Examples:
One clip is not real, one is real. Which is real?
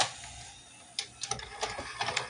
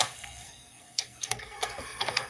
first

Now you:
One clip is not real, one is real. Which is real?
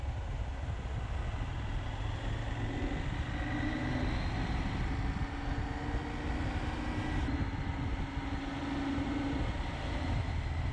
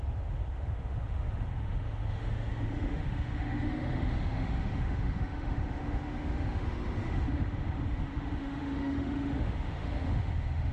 first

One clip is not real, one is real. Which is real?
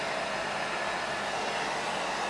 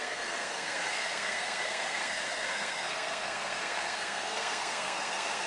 first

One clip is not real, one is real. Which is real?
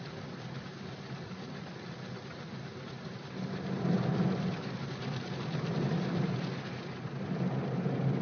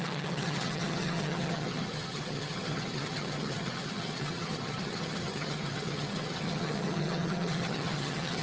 first